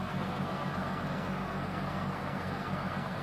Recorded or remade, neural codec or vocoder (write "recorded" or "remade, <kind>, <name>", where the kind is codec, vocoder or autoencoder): remade, codec, SNAC